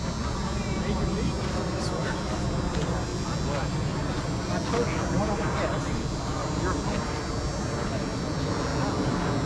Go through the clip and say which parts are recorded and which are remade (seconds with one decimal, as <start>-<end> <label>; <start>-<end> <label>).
0.0-9.5 recorded